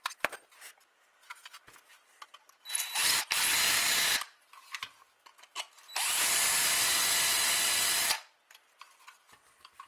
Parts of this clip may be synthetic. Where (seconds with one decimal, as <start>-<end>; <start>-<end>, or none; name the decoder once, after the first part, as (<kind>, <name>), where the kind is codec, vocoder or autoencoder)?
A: none

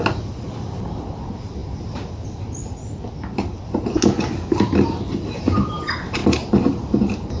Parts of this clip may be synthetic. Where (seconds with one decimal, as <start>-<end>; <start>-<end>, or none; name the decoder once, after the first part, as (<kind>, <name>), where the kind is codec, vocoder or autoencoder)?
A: none

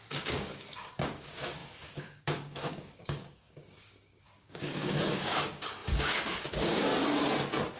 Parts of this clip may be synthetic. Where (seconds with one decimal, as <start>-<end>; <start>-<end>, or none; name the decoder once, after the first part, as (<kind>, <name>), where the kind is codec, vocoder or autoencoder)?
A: 0.0-6.9 (codec, DAC)

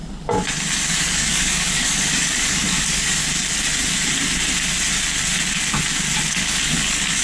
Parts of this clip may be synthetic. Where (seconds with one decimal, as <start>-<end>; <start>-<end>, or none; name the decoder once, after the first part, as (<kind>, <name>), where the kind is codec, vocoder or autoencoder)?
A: 1.0-3.2 (codec, DAC); 6.3-7.2